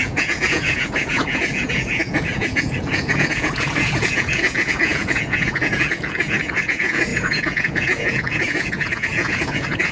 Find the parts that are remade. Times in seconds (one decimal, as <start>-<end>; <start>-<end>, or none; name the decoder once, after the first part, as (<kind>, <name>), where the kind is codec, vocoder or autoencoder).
0.0-9.9 (vocoder, Vocos)